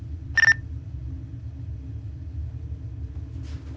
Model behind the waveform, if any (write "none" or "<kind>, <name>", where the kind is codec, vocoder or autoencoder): none